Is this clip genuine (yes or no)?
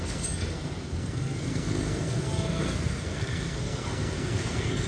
no